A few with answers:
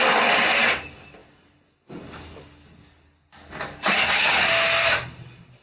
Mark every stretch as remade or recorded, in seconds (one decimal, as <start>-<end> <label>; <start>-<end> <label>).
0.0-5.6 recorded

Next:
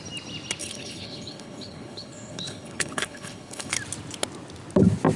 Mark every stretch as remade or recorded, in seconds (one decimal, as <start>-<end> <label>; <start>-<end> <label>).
0.0-0.6 recorded; 0.6-3.7 remade; 3.7-5.2 recorded

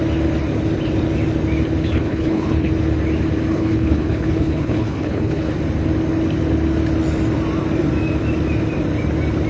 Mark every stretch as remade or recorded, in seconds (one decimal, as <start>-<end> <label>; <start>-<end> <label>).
0.0-1.8 recorded; 1.8-2.7 remade; 2.7-3.5 recorded; 3.5-5.5 remade; 5.5-9.5 recorded

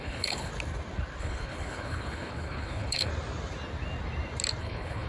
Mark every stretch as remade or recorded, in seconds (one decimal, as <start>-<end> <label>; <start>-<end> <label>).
0.0-0.5 remade; 0.5-1.2 recorded; 1.2-3.1 remade; 3.1-4.6 recorded; 4.6-5.1 remade

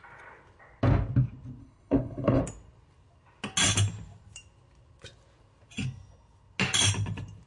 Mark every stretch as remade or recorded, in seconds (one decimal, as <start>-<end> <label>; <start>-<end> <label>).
0.0-1.6 recorded; 1.6-2.4 remade; 2.4-7.5 recorded

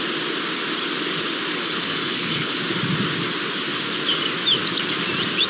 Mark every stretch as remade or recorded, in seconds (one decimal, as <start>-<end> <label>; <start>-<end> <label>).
0.0-1.6 recorded; 1.6-2.6 remade; 2.6-5.5 recorded

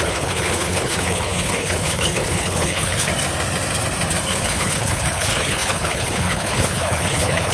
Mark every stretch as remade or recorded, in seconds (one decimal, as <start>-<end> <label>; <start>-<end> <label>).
0.0-3.1 remade; 3.1-4.3 recorded; 4.3-7.5 remade